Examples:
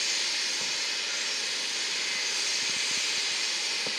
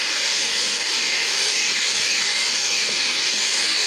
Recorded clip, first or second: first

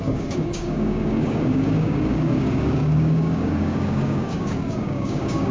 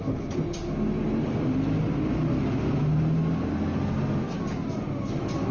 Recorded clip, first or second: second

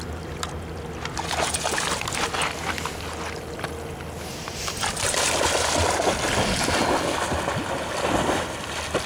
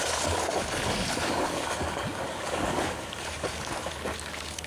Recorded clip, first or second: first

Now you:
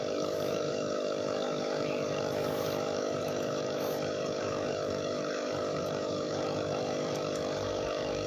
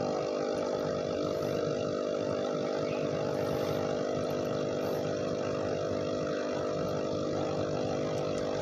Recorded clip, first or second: second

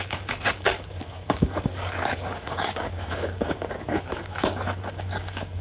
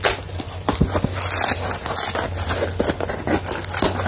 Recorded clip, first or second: second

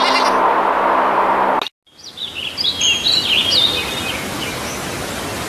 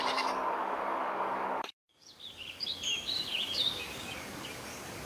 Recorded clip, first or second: first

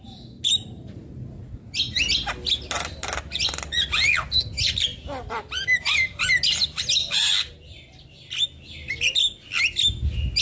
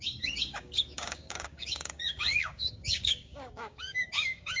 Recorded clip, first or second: first